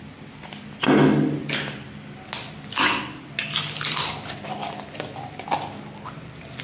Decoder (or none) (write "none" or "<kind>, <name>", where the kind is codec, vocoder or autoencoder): none